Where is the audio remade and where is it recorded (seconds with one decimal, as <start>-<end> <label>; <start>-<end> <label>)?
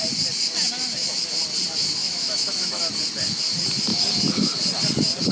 0.0-2.0 recorded; 2.0-2.8 remade; 2.8-5.3 recorded